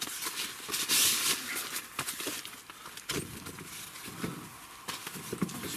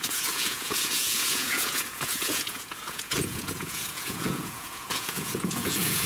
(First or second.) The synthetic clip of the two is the second